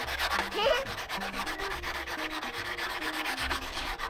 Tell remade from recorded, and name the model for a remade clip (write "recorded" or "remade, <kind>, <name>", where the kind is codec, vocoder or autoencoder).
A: remade, codec, DAC